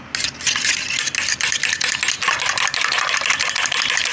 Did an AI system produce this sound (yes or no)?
no